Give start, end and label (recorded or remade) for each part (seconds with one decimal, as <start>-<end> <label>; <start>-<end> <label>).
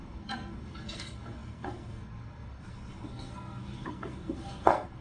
0.0-5.0 remade